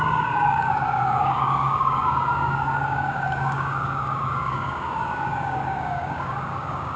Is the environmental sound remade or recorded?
remade